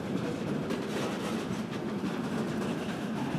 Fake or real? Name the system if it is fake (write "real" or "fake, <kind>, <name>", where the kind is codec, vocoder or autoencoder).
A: real